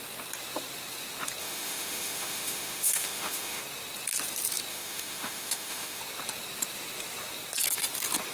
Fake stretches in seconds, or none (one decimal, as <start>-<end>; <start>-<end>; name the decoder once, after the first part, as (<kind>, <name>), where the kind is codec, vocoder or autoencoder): 1.4-3.6 (autoencoder, DAC-VAE); 4.7-6.0